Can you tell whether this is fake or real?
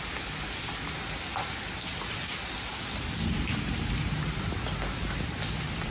real